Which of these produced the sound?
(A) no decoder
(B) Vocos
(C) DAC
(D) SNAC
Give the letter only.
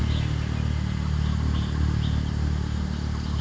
A